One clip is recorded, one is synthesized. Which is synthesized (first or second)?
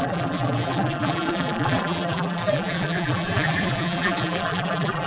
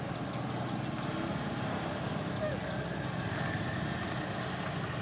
first